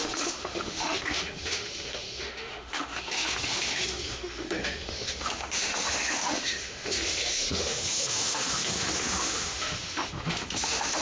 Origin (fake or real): fake